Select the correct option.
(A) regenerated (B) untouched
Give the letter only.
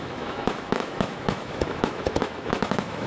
A